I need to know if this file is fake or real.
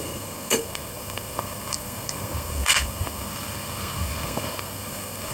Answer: fake